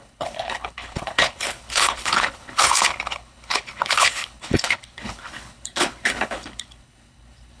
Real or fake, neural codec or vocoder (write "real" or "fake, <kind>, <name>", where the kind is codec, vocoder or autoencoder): fake, codec, HILCodec